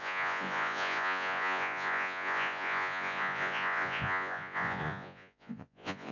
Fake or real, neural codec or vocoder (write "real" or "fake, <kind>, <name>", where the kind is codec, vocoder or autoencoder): fake, vocoder, Vocos